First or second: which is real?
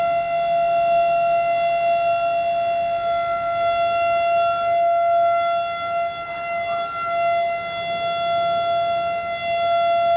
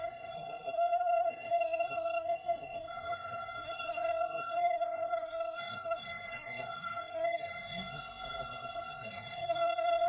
first